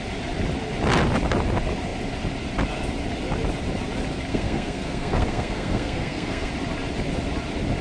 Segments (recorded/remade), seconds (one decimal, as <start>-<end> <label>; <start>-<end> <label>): 0.0-4.3 recorded; 4.3-6.5 remade; 6.5-7.8 recorded